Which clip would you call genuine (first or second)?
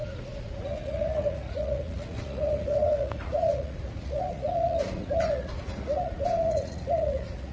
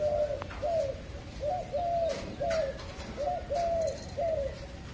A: second